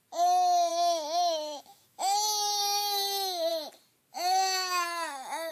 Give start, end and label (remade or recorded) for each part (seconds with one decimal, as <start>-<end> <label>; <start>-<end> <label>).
0.0-0.7 recorded; 0.7-3.5 remade; 3.5-4.1 recorded; 4.1-5.5 remade